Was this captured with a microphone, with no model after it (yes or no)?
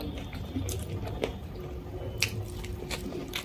yes